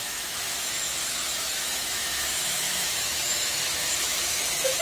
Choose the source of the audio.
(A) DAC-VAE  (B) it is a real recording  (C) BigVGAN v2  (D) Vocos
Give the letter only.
A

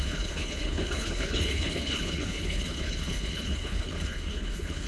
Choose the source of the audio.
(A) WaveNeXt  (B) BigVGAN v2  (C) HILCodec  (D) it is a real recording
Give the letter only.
C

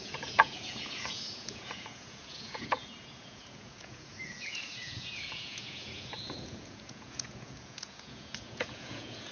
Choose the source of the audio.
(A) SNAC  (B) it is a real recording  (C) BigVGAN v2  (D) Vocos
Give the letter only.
D